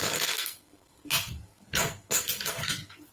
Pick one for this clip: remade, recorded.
remade